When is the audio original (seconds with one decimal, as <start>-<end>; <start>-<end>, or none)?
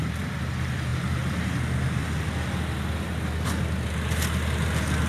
0.0-5.1